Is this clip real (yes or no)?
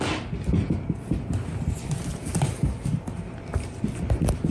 yes